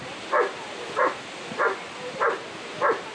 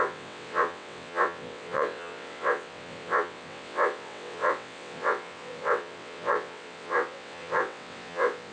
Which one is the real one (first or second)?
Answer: first